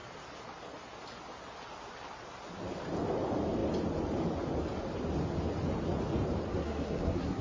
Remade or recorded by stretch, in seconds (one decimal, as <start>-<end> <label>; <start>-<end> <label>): 0.0-6.5 recorded; 6.5-7.4 remade

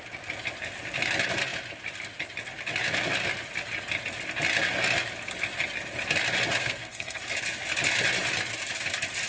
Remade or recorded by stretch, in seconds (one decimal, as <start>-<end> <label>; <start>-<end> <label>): 0.0-6.6 recorded; 6.6-7.2 remade; 7.2-9.3 recorded

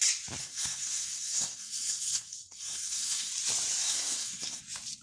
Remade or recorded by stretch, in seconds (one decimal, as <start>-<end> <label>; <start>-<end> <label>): 0.0-0.4 recorded; 0.4-3.3 remade; 3.3-3.8 recorded; 3.8-4.6 remade; 4.6-5.0 recorded

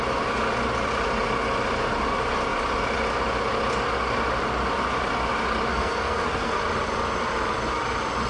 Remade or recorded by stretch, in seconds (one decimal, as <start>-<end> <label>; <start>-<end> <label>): 0.0-5.7 recorded; 5.7-6.6 remade; 6.6-8.3 recorded